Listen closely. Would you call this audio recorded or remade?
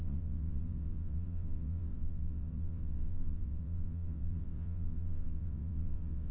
remade